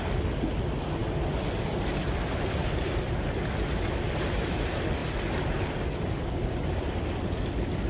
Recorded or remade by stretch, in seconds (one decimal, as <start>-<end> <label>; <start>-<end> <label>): 0.0-7.9 recorded

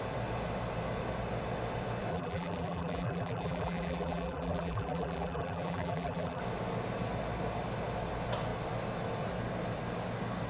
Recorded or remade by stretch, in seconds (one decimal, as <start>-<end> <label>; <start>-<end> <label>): 0.0-2.1 recorded; 2.1-6.4 remade; 6.4-10.5 recorded

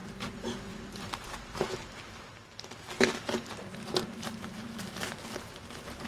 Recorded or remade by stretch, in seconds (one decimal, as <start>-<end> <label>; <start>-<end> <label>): 0.0-3.1 remade; 3.1-3.7 recorded; 3.7-6.1 remade

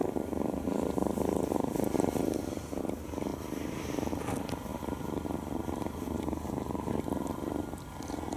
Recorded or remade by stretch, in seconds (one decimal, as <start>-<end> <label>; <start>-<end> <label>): 0.0-2.8 remade; 2.8-8.4 recorded